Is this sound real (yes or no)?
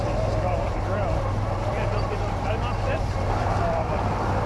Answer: no